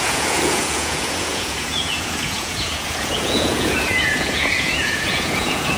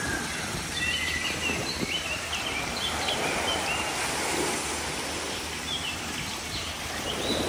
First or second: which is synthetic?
first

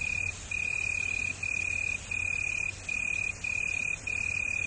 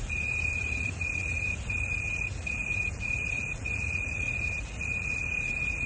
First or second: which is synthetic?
second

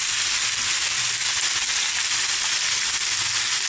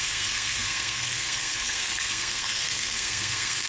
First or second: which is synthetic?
second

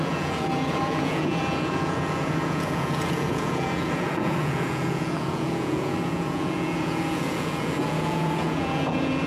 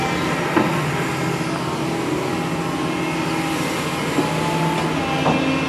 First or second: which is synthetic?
first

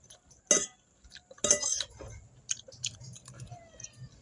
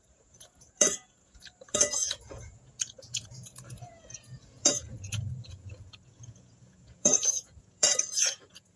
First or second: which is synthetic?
second